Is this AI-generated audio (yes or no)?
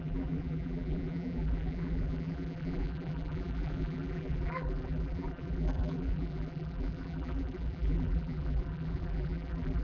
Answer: yes